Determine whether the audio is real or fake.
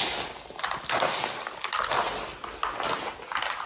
real